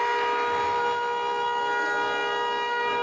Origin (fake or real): real